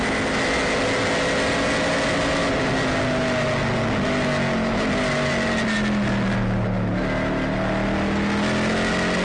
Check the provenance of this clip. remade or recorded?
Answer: recorded